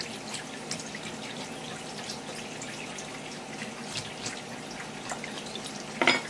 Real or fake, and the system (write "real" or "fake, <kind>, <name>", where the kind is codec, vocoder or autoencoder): real